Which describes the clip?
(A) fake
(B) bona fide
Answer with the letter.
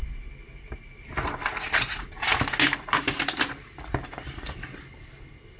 B